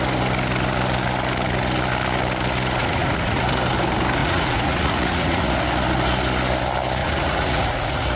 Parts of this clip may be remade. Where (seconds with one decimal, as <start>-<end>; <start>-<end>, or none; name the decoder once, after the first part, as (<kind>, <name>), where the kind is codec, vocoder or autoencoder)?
2.8-3.4 (vocoder, Vocos); 4.2-5.5; 7.0-8.2